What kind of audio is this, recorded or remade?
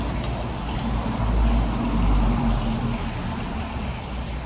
recorded